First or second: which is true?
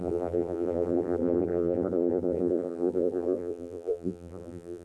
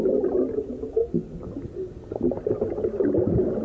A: second